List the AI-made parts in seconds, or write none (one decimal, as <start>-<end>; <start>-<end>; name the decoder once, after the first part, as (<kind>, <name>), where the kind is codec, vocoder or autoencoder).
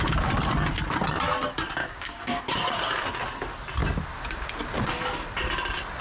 1.8-2.4 (codec, DAC)